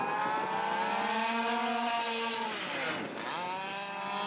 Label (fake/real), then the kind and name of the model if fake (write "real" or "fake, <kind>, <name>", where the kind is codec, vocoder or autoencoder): real